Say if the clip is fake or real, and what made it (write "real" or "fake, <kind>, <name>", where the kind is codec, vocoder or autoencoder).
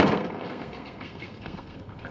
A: fake, codec, SNAC